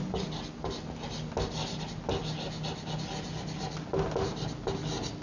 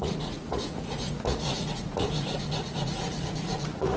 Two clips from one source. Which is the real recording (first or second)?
first